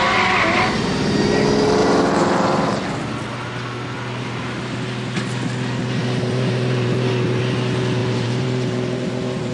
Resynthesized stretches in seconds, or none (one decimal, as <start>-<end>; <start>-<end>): 1.8-2.7; 6.0-7.4; 8.0-9.5